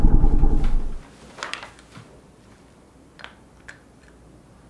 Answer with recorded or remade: recorded